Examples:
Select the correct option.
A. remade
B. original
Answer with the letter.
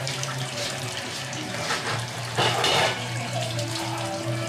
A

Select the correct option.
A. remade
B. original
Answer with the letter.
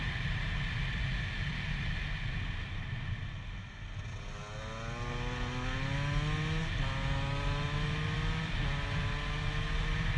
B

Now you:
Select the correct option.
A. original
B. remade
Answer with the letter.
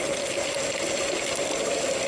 A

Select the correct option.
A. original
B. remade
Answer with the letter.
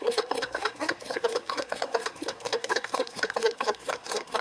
B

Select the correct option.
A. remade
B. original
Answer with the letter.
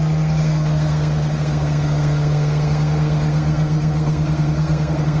A